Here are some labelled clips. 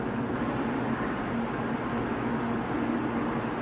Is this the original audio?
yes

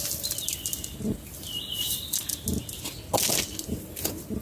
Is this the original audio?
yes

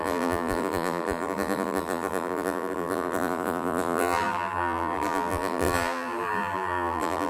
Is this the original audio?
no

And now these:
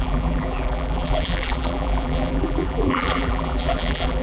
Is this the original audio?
no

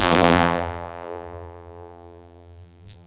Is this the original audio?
no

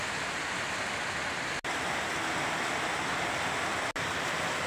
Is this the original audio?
yes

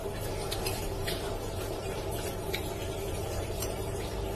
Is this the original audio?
no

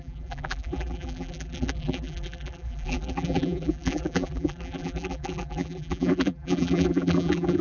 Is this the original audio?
no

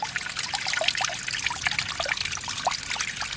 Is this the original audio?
yes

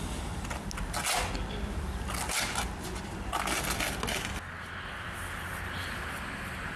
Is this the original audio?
yes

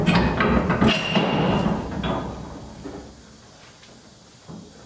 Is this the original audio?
yes